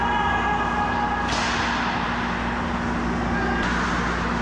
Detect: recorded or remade recorded